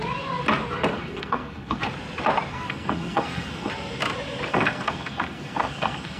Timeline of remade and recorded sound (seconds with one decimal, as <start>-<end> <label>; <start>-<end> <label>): 0.0-0.9 recorded; 0.9-1.8 remade; 1.8-2.5 recorded; 2.5-3.7 remade; 3.7-4.5 recorded; 4.5-6.2 remade